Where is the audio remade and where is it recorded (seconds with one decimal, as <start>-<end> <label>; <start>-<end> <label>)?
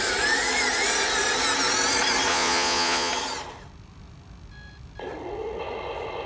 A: 0.0-2.3 recorded; 2.3-3.1 remade; 3.1-6.3 recorded